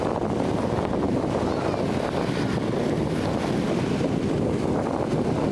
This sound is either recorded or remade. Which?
recorded